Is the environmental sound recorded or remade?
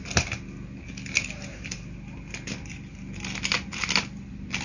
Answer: recorded